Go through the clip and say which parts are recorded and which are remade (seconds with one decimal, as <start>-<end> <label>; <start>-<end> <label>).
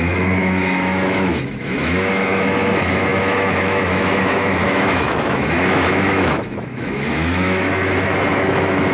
0.0-8.9 remade